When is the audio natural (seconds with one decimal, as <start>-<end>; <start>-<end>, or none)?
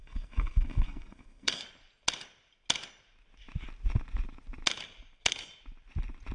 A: 1.6-6.3